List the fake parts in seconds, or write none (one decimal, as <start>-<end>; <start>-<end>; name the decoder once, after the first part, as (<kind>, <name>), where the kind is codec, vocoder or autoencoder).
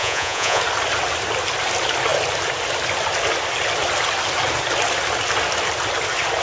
0.0-0.6 (vocoder, Vocos)